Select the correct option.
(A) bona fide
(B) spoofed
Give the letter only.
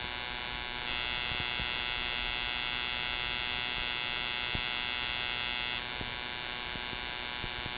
A